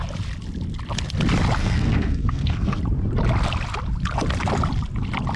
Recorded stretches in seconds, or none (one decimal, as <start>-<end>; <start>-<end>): 0.0-1.6; 2.8-5.4